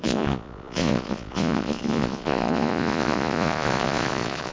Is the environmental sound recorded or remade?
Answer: remade